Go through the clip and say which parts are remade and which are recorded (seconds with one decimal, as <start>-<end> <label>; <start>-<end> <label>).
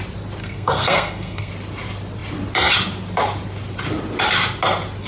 0.0-0.4 recorded; 0.4-1.5 remade; 1.5-5.1 recorded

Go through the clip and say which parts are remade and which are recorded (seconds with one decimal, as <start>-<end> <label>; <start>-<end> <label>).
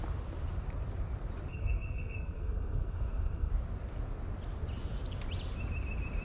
0.0-1.5 recorded; 1.5-3.5 remade; 3.5-6.2 recorded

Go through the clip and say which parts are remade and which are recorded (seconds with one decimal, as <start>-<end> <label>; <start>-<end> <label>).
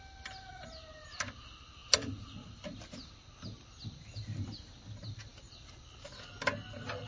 0.0-7.1 recorded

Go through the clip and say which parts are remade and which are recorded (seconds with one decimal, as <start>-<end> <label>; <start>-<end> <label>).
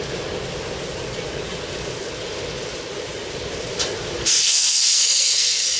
0.0-4.2 recorded; 4.2-5.8 remade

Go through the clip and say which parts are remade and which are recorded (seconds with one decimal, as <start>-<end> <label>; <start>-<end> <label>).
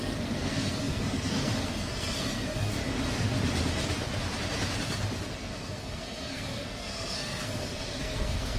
0.0-2.8 remade; 2.8-5.3 recorded; 5.3-8.6 remade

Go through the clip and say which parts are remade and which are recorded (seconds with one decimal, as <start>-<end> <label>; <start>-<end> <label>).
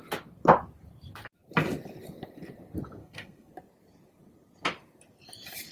0.0-3.0 recorded; 3.0-3.5 remade; 3.5-5.7 recorded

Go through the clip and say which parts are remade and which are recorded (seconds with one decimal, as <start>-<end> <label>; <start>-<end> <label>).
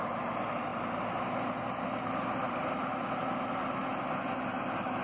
0.0-5.0 recorded